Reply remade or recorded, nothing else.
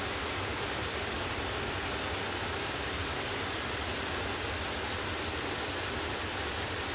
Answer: recorded